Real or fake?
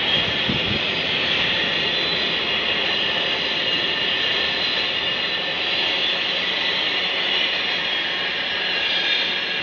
real